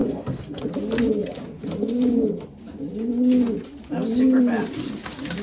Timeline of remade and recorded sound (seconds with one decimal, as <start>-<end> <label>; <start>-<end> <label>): 0.0-0.6 remade; 0.6-5.4 recorded